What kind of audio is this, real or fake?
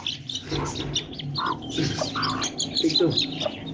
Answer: real